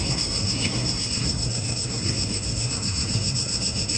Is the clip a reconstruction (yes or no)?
yes